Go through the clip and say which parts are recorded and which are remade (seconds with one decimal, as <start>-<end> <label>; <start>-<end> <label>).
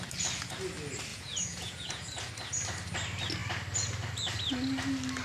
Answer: 0.0-1.1 recorded; 1.1-2.3 remade; 2.3-5.2 recorded